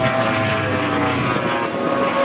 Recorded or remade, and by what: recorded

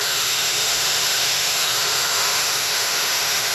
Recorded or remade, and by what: remade, autoencoder, DAC-VAE